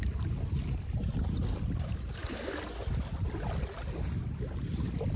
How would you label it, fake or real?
real